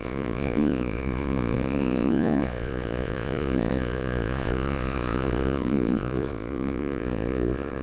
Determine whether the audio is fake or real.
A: fake